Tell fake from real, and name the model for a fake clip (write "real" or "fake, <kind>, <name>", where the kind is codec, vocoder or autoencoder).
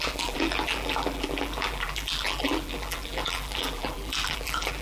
fake, vocoder, BigVGAN v2